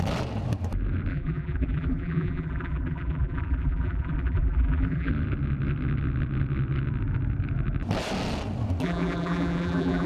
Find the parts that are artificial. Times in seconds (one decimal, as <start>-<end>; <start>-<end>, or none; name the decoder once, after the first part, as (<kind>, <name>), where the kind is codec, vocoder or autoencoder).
1.1-5.1 (vocoder, BigVGAN v2); 8.8-10.1